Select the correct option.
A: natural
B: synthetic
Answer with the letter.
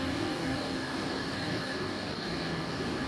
B